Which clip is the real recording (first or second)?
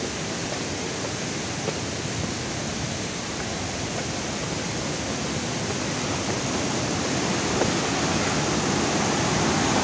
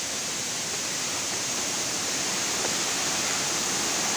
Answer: first